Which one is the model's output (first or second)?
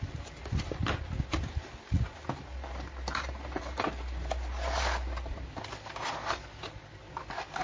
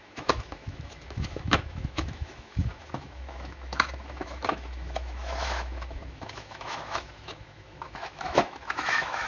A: second